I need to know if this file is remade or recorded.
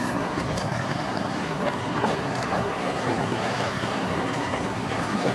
remade